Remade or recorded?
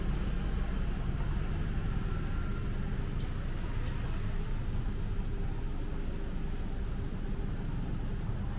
recorded